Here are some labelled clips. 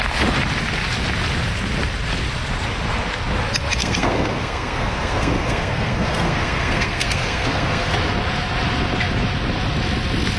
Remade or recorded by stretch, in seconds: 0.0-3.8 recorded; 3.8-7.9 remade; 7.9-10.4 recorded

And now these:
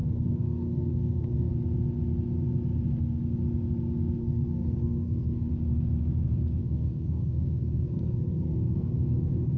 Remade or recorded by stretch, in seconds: 0.0-1.5 remade; 1.5-4.2 recorded; 4.2-5.5 remade; 5.5-6.6 recorded; 6.6-9.6 remade

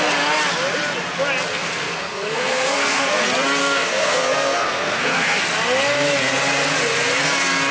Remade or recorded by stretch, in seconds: 0.0-1.5 recorded; 1.5-3.2 remade; 3.2-3.6 recorded; 3.6-5.4 remade; 5.4-7.7 recorded

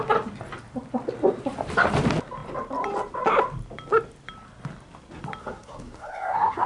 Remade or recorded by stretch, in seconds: 0.0-5.4 recorded; 5.4-6.7 remade

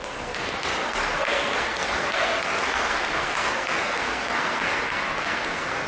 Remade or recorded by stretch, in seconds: 0.0-5.9 remade

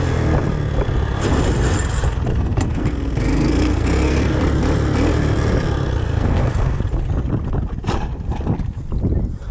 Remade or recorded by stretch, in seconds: 0.0-2.3 recorded; 2.3-4.4 remade; 4.4-6.0 recorded; 6.0-6.8 remade; 6.8-9.5 recorded

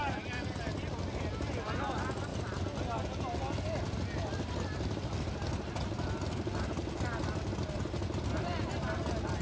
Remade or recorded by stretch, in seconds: 0.0-9.4 recorded

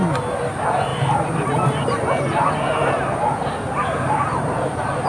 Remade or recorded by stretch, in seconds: 0.0-5.1 recorded